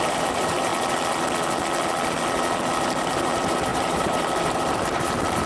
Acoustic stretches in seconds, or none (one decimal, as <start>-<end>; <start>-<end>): 0.7-3.0